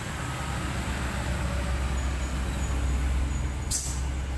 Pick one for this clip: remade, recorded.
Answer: recorded